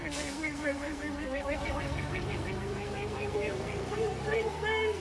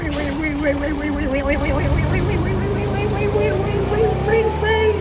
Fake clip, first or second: first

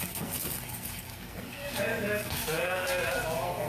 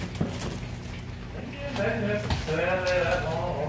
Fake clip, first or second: first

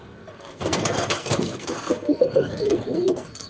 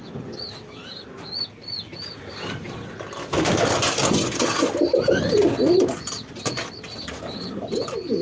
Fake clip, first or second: first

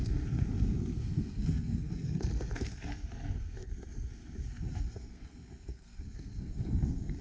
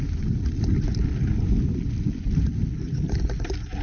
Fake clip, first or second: first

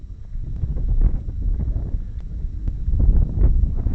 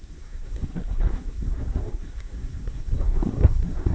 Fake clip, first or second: second